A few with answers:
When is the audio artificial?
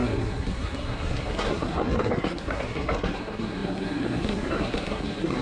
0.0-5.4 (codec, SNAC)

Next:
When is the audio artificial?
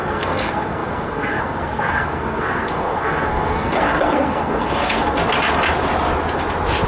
0.0-5.2 (codec, SNAC)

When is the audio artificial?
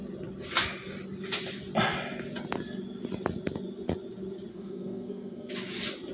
4.5-5.5 (codec, SNAC)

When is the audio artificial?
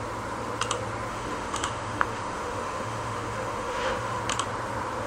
1.1-4.2 (autoencoder, DAC-VAE)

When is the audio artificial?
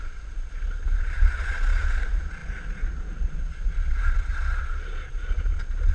0.0-5.9 (vocoder, Vocos)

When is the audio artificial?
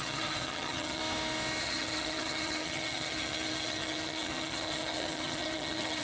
0.0-1.0 (vocoder, HiFi-GAN); 1.6-6.0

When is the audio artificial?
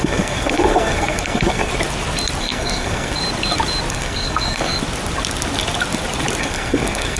0.0-1.7 (codec, SNAC); 2.4-3.2; 3.9-4.8; 6.4-7.2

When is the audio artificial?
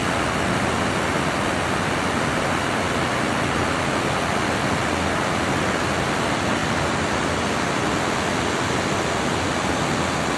none